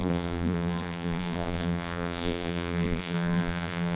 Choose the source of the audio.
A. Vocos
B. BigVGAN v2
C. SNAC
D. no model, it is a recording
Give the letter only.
B